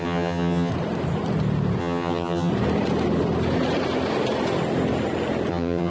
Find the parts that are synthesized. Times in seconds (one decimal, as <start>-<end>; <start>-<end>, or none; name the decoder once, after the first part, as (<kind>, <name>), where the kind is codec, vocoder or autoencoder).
0.0-0.7 (vocoder, HiFi-GAN); 1.8-2.5; 5.5-5.9